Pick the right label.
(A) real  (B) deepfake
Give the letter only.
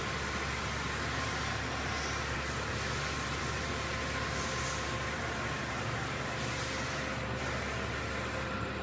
A